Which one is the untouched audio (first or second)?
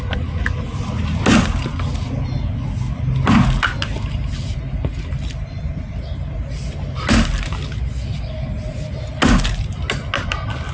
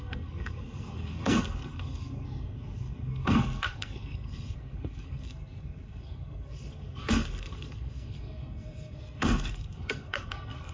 first